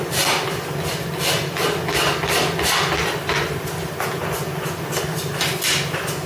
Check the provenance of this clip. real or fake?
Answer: real